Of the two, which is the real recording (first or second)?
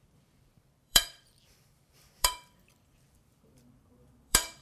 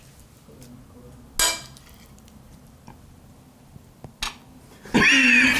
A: second